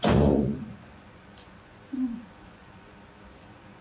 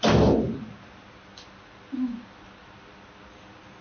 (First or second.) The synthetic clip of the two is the first